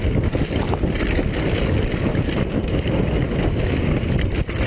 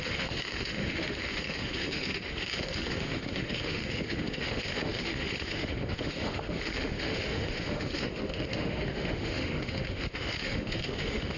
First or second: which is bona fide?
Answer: first